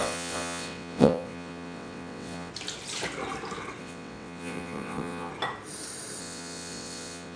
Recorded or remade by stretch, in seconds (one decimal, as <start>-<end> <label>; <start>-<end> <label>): 0.0-2.5 remade; 2.5-3.8 recorded; 3.8-5.3 remade; 5.3-6.2 recorded; 6.2-7.4 remade